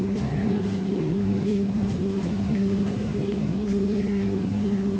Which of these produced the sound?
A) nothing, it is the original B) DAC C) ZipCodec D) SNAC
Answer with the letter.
D